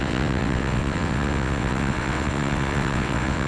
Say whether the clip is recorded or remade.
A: remade